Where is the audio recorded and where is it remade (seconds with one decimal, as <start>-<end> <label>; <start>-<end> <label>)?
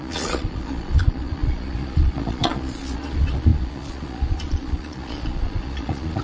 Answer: 0.0-6.2 remade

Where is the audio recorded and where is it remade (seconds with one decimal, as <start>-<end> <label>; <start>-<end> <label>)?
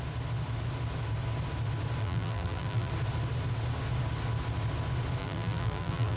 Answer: 0.0-2.0 recorded; 2.0-2.9 remade; 2.9-5.2 recorded; 5.2-6.2 remade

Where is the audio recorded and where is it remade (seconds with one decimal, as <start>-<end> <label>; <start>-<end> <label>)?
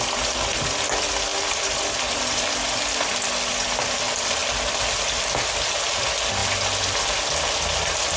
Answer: 0.0-1.3 recorded; 1.3-1.8 remade; 1.8-8.2 recorded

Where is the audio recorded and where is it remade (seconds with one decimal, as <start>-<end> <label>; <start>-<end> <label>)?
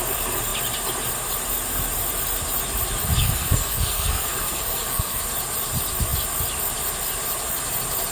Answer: 0.0-3.2 recorded; 3.2-5.2 remade; 5.2-8.1 recorded